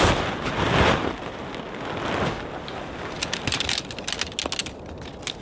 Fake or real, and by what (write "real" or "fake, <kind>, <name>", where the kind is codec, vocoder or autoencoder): real